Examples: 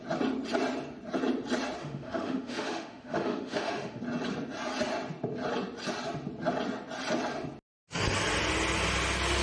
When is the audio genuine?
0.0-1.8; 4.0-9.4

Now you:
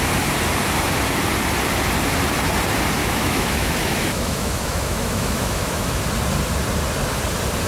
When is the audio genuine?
0.0-3.0; 6.0-7.7

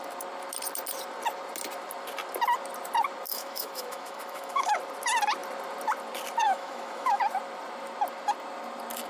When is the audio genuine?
0.0-3.3; 4.8-6.4; 7.2-9.1

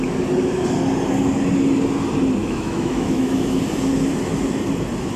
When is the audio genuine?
0.0-2.4; 3.6-5.2